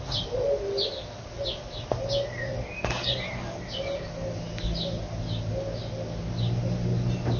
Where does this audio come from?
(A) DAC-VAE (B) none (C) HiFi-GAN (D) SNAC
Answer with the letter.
B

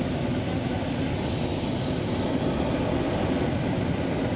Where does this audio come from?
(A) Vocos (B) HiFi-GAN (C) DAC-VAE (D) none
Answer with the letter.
D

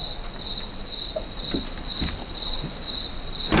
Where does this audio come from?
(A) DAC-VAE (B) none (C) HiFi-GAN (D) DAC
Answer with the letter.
B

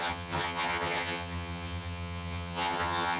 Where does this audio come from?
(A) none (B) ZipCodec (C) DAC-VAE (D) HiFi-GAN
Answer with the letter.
D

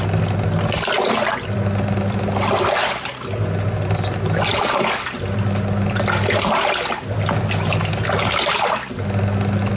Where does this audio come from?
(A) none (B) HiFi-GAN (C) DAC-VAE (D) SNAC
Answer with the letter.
A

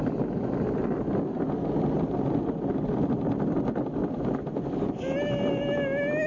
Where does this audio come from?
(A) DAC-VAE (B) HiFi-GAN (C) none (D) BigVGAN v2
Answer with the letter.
C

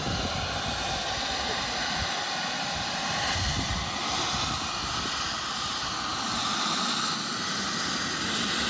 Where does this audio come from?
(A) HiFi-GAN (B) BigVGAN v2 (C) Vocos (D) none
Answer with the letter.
D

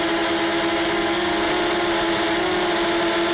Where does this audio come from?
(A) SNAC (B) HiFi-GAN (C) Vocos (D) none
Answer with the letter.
D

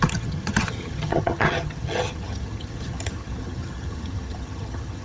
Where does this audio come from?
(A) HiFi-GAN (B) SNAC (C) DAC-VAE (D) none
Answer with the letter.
A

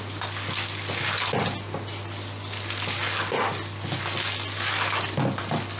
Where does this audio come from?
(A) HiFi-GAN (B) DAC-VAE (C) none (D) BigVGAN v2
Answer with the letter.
C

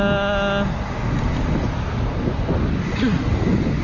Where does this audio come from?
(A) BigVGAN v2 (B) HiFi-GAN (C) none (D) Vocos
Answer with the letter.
C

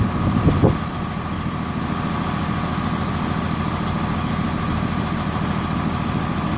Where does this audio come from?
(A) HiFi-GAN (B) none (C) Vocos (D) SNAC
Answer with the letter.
B